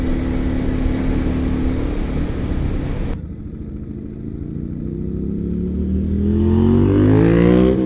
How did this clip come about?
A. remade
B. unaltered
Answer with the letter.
B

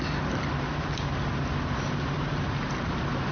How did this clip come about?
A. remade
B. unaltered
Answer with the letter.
B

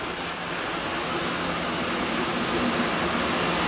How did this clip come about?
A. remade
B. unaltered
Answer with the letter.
B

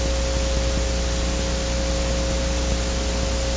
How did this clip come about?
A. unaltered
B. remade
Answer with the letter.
A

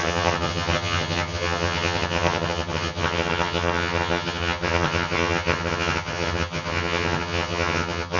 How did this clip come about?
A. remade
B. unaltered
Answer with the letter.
A